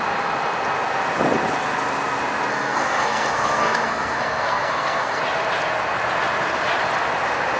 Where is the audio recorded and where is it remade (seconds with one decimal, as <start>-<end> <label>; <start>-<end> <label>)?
0.0-2.5 recorded; 2.5-5.2 remade; 5.2-7.6 recorded